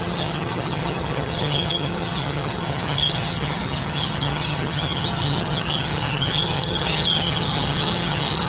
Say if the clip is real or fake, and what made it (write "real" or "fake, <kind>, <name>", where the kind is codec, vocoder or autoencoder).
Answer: fake, vocoder, HiFi-GAN